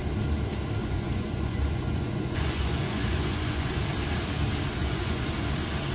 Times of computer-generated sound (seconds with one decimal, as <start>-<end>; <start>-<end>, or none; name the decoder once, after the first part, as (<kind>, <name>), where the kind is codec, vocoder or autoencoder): 0.8-3.8 (vocoder, Vocos); 4.8-5.3